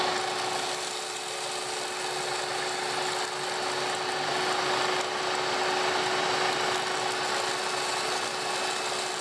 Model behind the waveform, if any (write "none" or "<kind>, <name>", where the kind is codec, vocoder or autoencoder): none